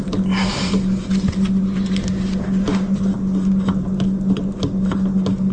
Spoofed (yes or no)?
no